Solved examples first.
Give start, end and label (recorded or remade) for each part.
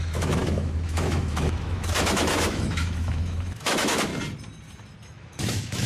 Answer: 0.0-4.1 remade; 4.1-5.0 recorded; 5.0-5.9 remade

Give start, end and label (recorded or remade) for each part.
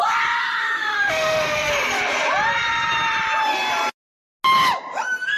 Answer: 0.0-0.6 recorded; 0.6-1.7 remade; 1.7-5.4 recorded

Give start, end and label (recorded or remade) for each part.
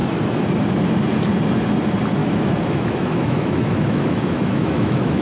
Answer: 0.0-2.2 recorded; 2.2-5.2 remade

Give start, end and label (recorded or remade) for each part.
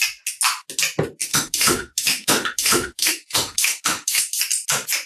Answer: 0.0-1.3 recorded; 1.3-4.4 remade; 4.4-5.1 recorded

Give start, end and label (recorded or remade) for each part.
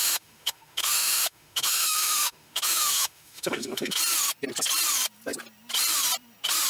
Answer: 0.0-4.0 remade; 4.0-6.7 recorded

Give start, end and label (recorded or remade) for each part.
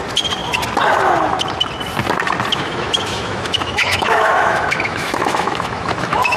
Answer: 0.0-2.5 recorded; 2.5-6.4 remade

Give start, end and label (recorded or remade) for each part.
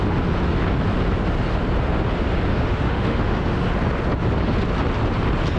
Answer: 0.0-2.5 recorded; 2.5-3.7 remade; 3.7-5.6 recorded